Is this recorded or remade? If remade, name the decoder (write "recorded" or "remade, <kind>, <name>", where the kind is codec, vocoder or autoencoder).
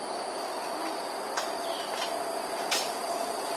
recorded